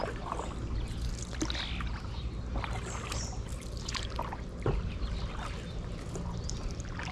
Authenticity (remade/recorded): recorded